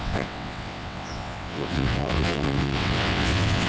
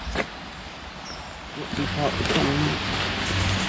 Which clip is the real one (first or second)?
second